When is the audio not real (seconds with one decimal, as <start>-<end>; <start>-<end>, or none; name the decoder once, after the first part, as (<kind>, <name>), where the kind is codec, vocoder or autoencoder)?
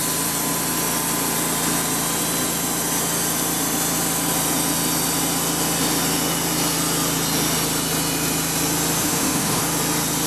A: 9.0-9.6 (autoencoder, DAC-VAE)